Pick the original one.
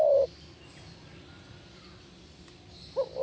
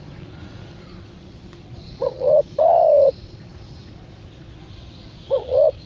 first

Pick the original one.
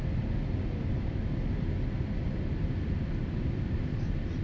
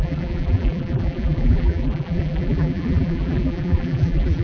first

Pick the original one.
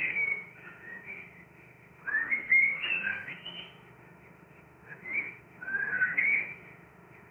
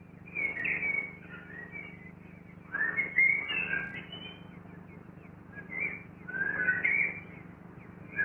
second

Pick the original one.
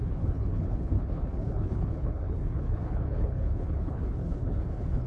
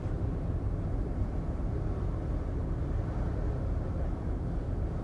second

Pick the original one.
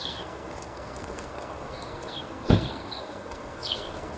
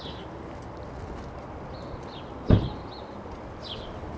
second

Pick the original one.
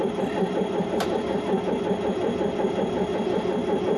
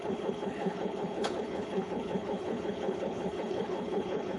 first